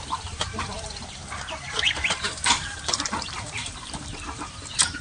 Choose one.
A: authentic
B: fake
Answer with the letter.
B